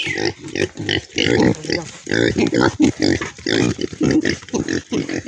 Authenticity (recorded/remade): recorded